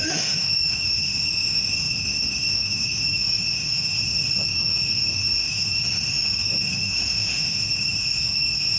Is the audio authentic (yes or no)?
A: no